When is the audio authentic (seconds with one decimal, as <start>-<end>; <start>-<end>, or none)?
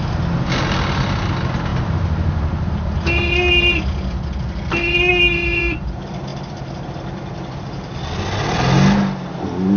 0.0-9.8